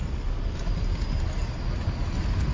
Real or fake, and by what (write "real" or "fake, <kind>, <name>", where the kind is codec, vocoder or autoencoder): real